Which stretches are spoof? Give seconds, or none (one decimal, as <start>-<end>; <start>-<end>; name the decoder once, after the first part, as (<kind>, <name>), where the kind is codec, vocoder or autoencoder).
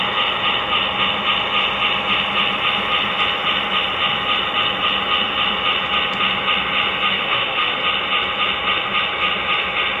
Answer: 7.1-7.8 (autoencoder, DAC-VAE)